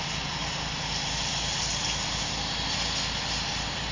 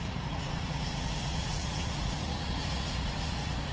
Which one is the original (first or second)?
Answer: first